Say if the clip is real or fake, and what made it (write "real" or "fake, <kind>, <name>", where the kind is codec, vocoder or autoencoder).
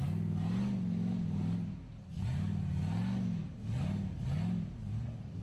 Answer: real